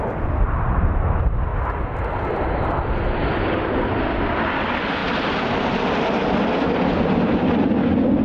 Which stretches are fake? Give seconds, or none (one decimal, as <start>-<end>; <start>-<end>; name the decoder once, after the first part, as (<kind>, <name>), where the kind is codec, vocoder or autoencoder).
none